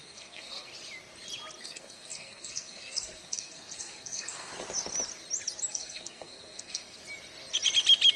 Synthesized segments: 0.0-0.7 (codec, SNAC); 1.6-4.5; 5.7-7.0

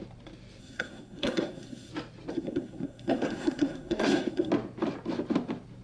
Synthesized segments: 0.6-1.9 (codec, SNAC); 2.3-4.5

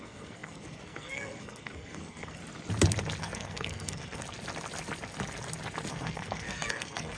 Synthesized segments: 0.0-2.4 (codec, SNAC); 3.2-4.2; 5.9-7.2

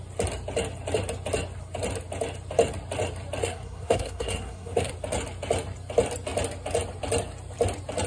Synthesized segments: 3.4-4.9 (codec, SNAC)

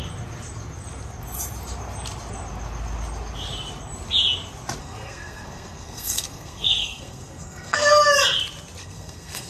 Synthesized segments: 4.8-7.9 (codec, SNAC); 8.8-9.5

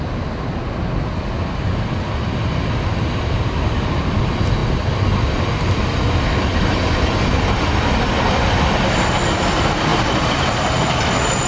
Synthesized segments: none

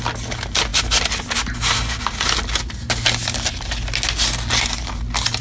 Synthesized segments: none

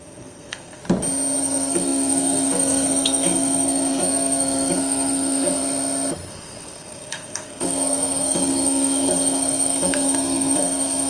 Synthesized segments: 0.0-0.8 (codec, SNAC); 1.4-5.6; 6.3-11.1